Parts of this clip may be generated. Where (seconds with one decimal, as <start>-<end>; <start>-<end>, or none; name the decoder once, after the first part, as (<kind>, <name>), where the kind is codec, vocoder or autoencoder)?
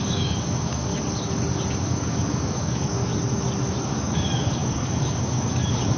0.0-0.9 (codec, DAC); 1.8-3.1; 3.8-6.0